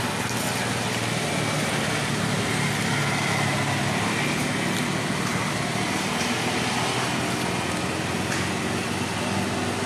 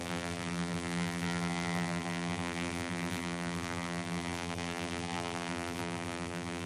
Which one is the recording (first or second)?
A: first